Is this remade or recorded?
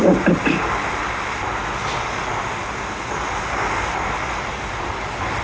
recorded